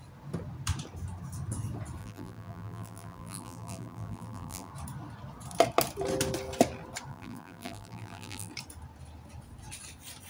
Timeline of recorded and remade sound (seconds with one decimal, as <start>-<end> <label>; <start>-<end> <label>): 0.0-2.0 recorded; 2.0-4.7 remade; 4.7-7.1 recorded; 7.1-8.5 remade; 8.5-10.3 recorded